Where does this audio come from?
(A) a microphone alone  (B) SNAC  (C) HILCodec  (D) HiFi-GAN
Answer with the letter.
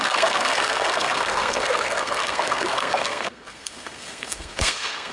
B